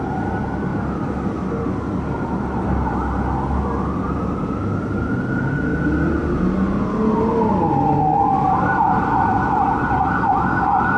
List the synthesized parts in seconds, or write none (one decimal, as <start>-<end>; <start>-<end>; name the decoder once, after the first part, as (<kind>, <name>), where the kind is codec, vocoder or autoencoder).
none